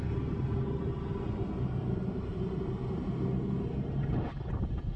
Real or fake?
real